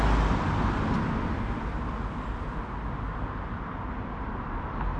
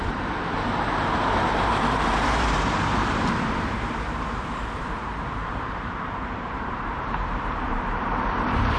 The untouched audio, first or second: first